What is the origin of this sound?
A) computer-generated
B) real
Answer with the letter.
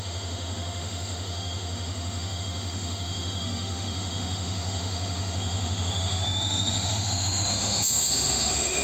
A